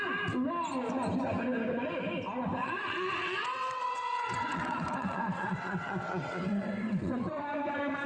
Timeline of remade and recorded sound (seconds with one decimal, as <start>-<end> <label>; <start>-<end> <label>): 0.0-2.6 recorded; 2.6-7.3 remade; 7.3-8.1 recorded